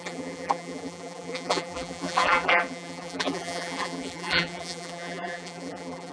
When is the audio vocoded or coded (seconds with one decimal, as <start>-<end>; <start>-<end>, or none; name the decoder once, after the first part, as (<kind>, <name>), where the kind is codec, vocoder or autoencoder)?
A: 0.0-6.1 (vocoder, BigVGAN v2)